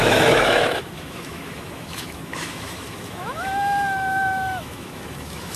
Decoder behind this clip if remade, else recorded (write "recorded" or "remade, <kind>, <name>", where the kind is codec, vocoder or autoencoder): remade, autoencoder, DAC-VAE